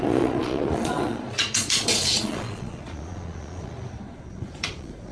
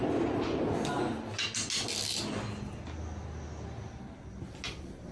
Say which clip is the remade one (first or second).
first